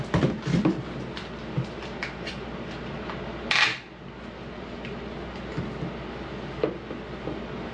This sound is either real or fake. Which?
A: real